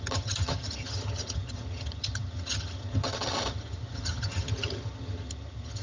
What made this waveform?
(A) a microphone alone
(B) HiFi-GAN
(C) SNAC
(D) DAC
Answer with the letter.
B